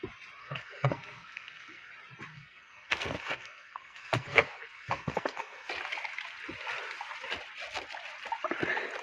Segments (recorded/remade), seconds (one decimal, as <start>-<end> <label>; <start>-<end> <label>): 0.0-0.4 recorded; 0.4-1.9 remade; 1.9-2.3 recorded; 2.3-5.7 remade; 5.7-9.0 recorded